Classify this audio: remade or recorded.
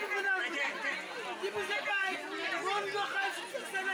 recorded